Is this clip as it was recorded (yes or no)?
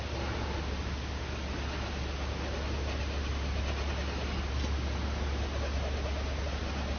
yes